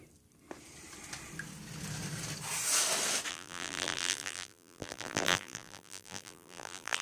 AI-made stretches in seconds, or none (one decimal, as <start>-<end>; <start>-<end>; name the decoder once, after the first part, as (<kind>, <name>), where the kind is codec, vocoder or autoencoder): 3.3-7.0 (vocoder, BigVGAN v2)